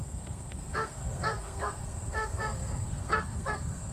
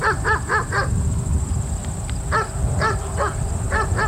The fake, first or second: first